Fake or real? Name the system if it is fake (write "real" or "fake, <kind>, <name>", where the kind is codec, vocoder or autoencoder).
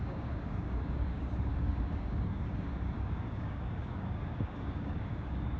fake, codec, DAC